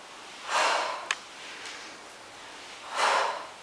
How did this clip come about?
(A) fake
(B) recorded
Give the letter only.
B